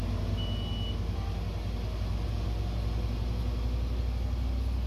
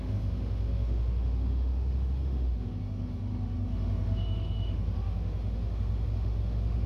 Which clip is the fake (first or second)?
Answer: second